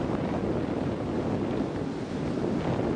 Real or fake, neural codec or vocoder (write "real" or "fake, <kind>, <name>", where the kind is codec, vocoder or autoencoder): real